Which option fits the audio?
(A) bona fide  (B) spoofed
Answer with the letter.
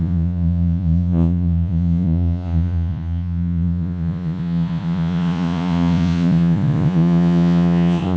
B